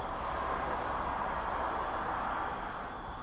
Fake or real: real